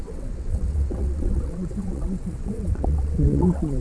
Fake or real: fake